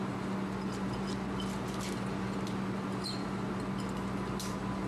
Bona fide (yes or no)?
yes